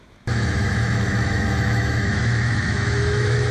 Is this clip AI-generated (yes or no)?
yes